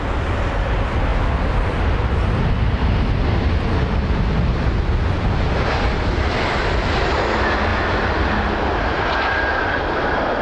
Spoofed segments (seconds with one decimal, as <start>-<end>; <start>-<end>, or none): none